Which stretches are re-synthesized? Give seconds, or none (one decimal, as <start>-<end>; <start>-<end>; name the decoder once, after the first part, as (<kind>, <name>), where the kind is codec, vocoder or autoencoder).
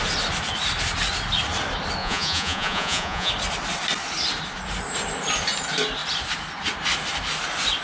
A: 2.0-3.3 (vocoder, Vocos)